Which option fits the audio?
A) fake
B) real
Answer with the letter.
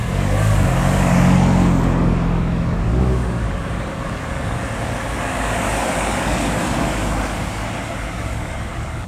A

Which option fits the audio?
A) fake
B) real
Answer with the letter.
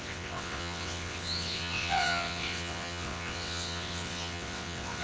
A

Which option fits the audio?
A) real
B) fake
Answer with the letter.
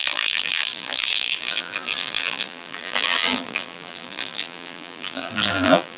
B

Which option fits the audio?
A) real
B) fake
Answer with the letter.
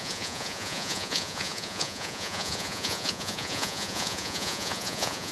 B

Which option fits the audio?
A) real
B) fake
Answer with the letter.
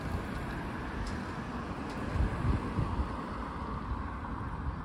A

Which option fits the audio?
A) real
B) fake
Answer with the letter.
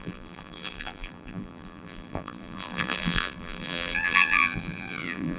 B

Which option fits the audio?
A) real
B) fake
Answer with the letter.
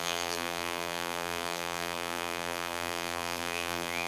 B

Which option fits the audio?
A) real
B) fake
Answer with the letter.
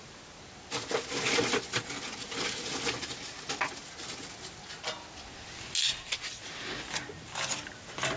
A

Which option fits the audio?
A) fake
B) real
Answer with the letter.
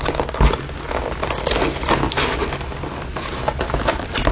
B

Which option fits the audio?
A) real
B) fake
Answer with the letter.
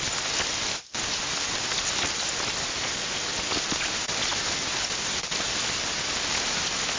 A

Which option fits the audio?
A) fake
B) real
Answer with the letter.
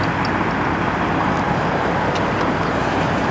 B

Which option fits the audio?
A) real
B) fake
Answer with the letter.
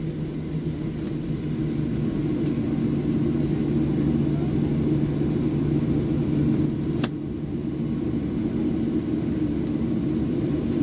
A